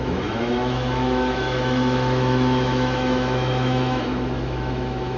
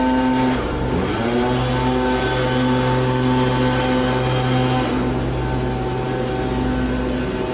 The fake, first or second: first